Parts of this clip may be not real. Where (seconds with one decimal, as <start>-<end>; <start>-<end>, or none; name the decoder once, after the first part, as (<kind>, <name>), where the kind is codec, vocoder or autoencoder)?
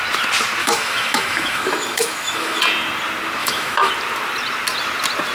0.6-2.6 (autoencoder, DAC-VAE); 3.4-3.9